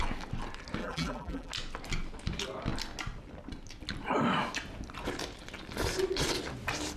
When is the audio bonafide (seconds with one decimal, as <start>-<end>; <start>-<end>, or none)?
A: 0.0-0.8; 1.5-7.0